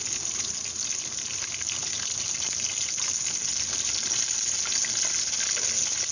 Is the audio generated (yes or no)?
no